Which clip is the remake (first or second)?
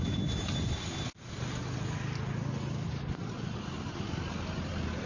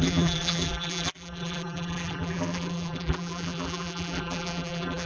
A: second